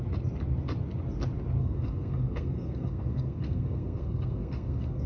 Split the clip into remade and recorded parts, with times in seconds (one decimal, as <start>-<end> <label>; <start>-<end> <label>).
0.0-1.6 recorded; 1.6-5.1 remade